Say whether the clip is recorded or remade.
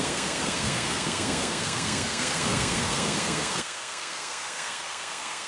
remade